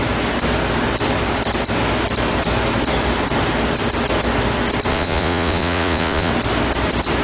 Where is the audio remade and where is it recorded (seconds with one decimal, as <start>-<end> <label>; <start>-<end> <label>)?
0.0-4.9 recorded; 4.9-6.3 remade; 6.3-7.2 recorded